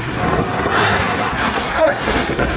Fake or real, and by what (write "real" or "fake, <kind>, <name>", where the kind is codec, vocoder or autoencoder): fake, codec, SNAC